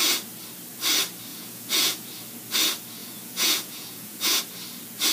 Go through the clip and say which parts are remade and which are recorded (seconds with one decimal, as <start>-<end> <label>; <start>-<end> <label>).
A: 0.0-1.3 recorded; 1.3-2.1 remade; 2.1-3.0 recorded; 3.0-4.4 remade; 4.4-5.1 recorded